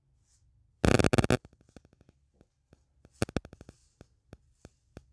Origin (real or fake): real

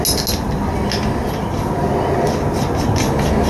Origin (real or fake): real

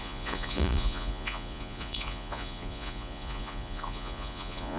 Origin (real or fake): fake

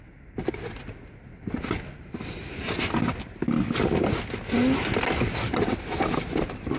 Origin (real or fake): real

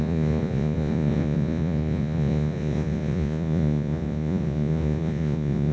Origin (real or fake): fake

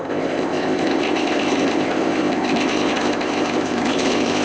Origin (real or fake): fake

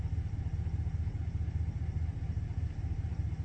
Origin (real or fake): real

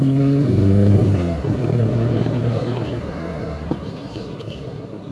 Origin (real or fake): fake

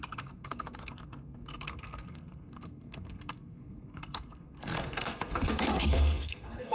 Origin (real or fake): fake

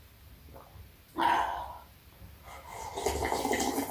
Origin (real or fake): real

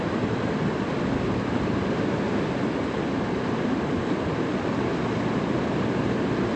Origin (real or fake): real